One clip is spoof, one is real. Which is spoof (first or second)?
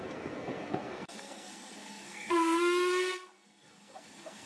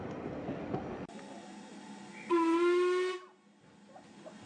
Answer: first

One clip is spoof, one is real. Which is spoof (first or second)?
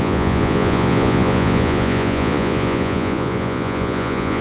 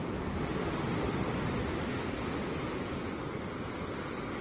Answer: first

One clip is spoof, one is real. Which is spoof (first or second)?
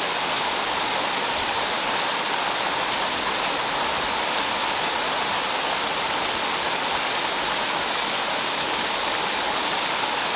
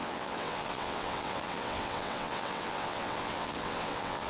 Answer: second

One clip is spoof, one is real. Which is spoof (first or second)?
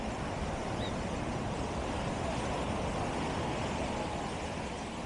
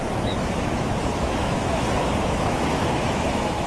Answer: second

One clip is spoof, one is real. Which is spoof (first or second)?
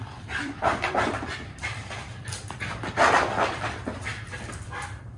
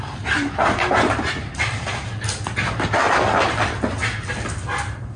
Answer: first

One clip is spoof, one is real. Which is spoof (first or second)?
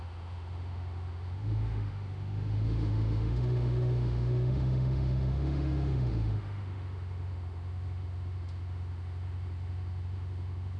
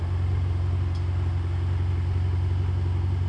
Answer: first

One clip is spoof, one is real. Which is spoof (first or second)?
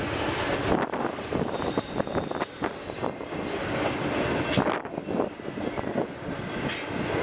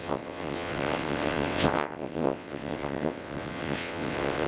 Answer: second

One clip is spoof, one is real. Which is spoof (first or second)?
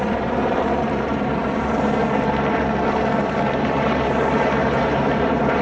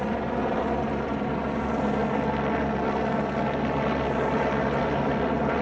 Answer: first